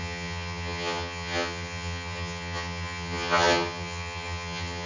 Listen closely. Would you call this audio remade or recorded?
remade